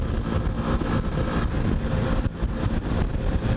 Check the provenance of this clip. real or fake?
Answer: real